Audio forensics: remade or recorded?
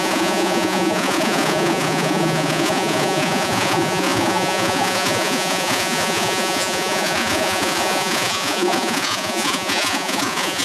remade